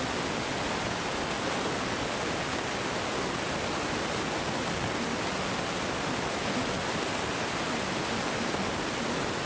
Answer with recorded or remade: recorded